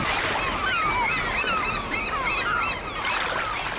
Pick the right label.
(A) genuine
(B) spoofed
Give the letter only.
A